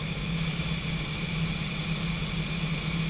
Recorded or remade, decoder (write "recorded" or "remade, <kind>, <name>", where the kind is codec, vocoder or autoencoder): recorded